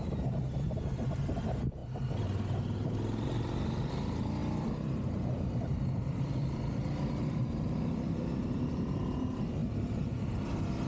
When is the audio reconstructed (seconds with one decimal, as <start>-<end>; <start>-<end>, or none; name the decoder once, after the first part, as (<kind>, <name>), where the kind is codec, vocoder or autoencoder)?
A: 4.4-9.0 (vocoder, BigVGAN v2); 9.6-10.3